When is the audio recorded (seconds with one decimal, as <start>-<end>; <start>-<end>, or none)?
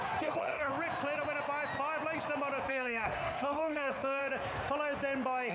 0.7-2.7; 4.2-5.5